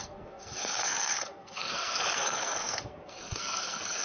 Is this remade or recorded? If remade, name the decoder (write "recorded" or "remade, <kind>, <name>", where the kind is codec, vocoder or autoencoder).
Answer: remade, codec, SNAC